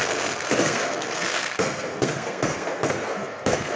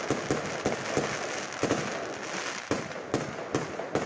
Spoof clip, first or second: first